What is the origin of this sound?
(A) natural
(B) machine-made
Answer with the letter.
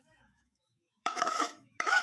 B